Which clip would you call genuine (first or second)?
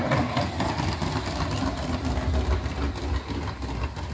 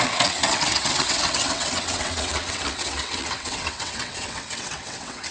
first